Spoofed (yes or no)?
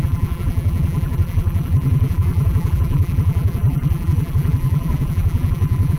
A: yes